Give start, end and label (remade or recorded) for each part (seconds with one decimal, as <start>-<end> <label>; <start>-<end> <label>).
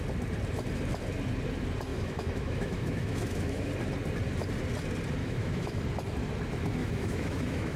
0.0-1.9 recorded; 1.9-3.7 remade; 3.7-5.2 recorded; 5.2-5.8 remade; 5.8-6.8 recorded; 6.8-7.8 remade